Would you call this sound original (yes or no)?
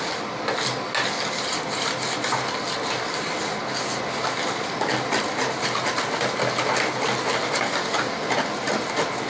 yes